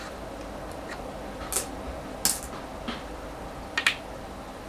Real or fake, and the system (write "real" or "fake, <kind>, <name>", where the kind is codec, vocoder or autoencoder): real